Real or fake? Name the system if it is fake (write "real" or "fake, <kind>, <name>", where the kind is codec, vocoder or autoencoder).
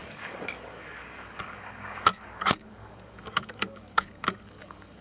fake, codec, DAC